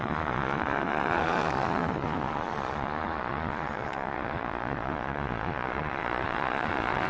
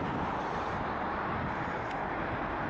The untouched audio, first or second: second